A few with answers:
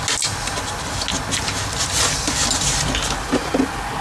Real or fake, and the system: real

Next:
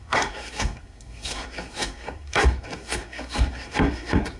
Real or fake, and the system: fake, codec, SNAC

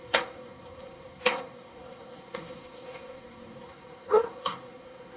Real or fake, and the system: fake, codec, SNAC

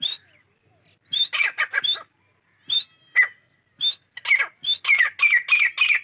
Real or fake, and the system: real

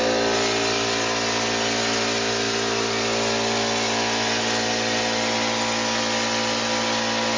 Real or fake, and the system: real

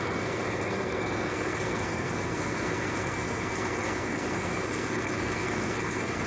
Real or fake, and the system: fake, codec, SNAC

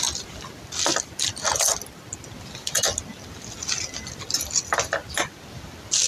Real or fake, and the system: real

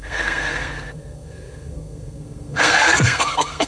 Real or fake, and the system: fake, codec, SNAC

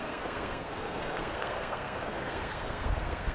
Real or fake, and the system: fake, codec, SNAC